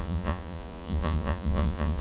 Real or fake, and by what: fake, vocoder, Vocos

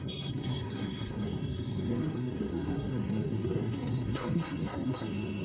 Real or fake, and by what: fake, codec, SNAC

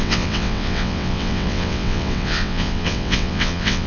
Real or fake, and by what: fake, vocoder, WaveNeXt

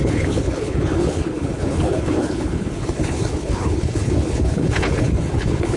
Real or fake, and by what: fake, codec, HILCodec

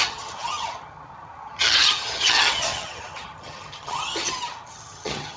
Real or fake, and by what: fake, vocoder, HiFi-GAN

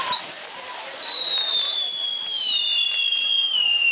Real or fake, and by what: real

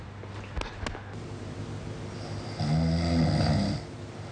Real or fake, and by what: real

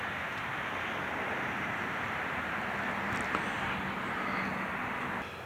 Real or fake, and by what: real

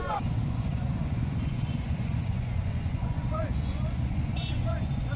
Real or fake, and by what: fake, vocoder, Vocos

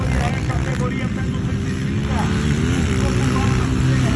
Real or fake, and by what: real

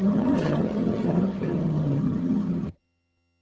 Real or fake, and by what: fake, vocoder, HiFi-GAN